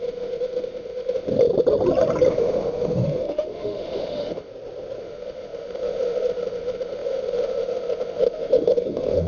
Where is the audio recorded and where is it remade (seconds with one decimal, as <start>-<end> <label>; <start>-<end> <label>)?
0.0-1.3 remade; 1.3-2.3 recorded; 2.3-4.5 remade; 4.5-5.0 recorded; 5.0-9.3 remade